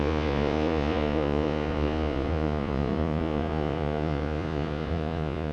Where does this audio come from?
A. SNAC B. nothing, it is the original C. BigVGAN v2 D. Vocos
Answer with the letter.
D